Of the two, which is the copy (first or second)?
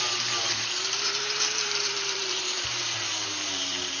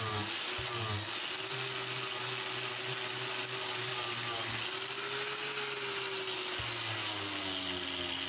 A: first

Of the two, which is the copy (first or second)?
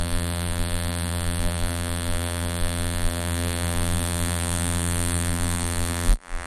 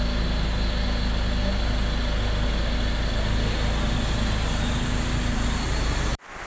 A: first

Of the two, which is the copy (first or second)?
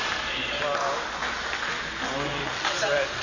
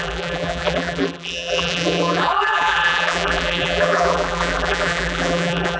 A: second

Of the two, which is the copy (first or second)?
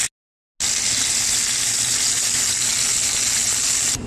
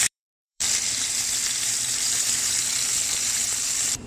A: second